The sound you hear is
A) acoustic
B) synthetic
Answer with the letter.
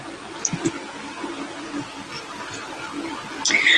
A